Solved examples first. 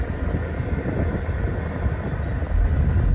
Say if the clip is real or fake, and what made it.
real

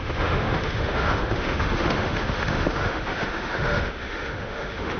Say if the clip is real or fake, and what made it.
fake, autoencoder, DAC-VAE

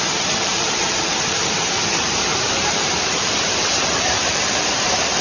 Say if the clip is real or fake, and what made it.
fake, vocoder, BigVGAN v2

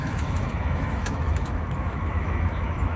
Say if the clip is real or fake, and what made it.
fake, autoencoder, DAC-VAE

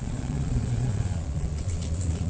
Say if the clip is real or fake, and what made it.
fake, vocoder, Vocos